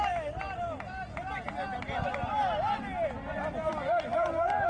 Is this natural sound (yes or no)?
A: yes